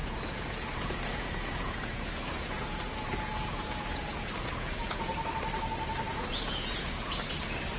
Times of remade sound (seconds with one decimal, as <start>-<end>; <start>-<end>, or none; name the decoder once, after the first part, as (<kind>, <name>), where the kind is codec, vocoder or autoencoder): 0.0-4.3 (vocoder, Vocos); 4.8-5.3; 6.1-7.2